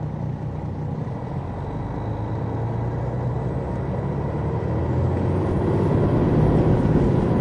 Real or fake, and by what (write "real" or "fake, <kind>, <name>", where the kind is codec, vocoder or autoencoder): real